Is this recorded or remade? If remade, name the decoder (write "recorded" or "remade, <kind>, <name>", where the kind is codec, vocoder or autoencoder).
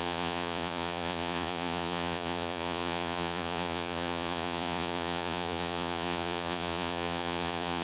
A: remade, vocoder, Vocos